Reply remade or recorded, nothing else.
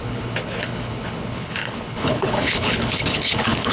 remade